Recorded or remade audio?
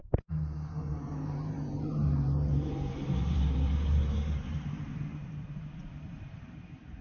remade